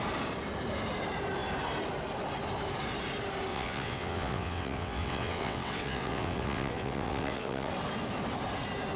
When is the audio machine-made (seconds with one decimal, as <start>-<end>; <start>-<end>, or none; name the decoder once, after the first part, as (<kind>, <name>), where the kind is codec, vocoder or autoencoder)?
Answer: 3.5-7.7 (vocoder, WaveNeXt)